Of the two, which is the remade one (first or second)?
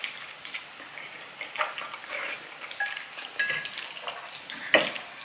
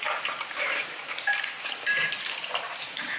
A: second